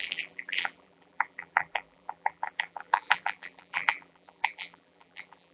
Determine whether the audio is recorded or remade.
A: remade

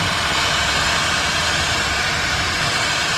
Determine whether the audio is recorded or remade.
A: recorded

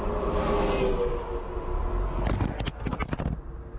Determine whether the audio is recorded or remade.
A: recorded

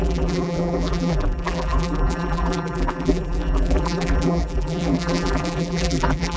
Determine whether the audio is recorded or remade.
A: remade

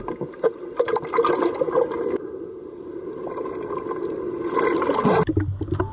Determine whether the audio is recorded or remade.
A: recorded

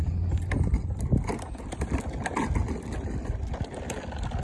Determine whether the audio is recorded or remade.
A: recorded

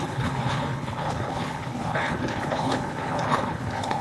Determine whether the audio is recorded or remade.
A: remade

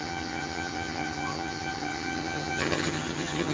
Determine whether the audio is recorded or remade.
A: remade